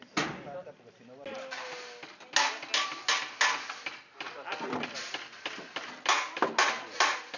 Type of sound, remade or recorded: recorded